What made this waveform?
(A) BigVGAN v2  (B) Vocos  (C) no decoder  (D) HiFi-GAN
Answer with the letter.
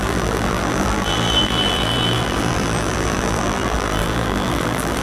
A